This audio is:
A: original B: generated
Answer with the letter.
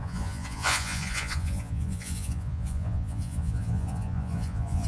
B